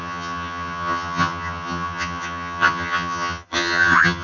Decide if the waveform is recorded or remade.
remade